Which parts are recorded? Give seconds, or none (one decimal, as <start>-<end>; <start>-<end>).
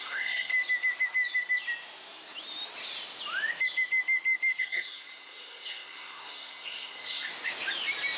0.5-4.6; 7.3-8.2